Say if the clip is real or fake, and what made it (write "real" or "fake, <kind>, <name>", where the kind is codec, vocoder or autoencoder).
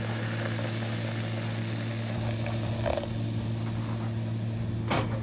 real